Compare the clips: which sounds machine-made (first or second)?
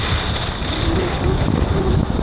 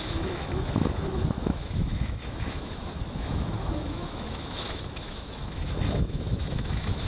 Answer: second